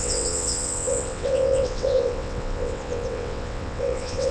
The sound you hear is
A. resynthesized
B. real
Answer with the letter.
A